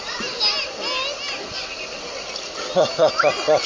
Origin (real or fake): real